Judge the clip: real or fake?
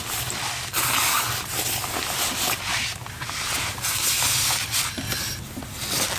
real